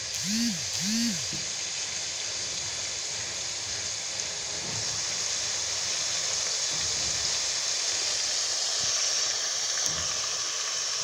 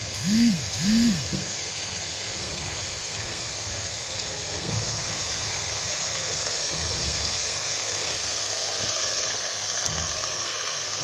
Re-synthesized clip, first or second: second